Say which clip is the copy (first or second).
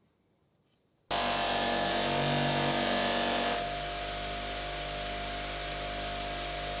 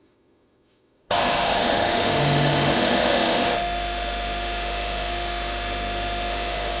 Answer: second